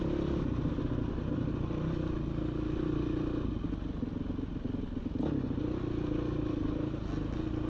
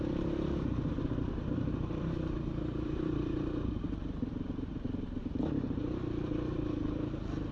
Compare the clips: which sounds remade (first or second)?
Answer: second